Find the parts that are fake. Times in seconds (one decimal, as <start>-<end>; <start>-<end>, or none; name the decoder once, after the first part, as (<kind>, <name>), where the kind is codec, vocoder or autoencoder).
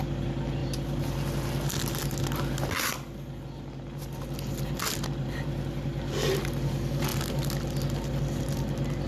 none